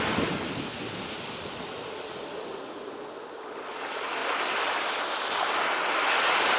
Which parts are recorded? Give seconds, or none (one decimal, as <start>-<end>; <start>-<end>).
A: 0.0-6.6